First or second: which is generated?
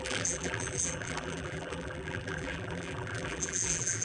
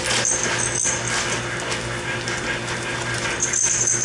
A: first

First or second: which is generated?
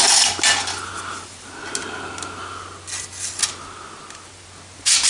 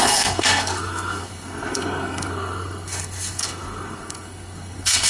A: second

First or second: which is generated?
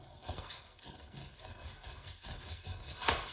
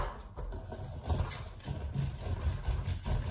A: first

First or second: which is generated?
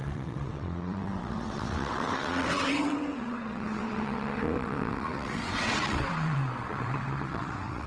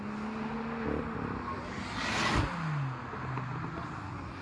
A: first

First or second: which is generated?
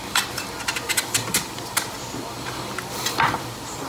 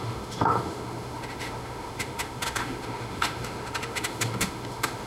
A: second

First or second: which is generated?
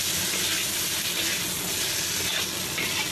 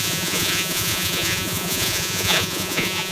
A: second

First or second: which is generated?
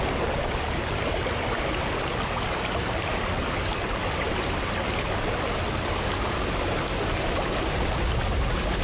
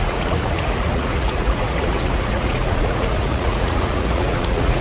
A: second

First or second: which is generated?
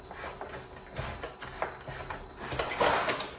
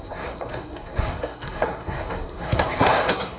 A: second